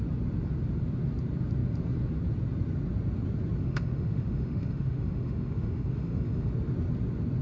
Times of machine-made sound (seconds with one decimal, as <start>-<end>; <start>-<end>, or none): 3.6-6.5